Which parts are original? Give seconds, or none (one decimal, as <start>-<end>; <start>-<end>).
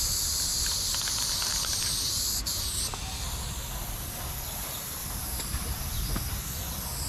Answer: 0.0-5.0; 6.1-7.1